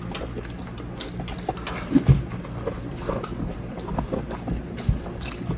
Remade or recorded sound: recorded